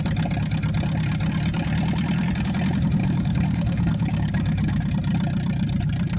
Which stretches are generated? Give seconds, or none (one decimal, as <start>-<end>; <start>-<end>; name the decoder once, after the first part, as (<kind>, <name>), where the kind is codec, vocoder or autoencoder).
3.0-4.9 (codec, DAC)